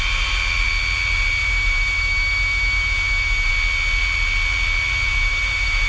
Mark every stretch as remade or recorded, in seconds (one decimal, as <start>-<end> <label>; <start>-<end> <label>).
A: 0.0-1.4 recorded; 1.4-3.5 remade; 3.5-5.1 recorded; 5.1-5.9 remade